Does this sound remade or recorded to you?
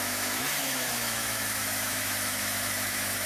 remade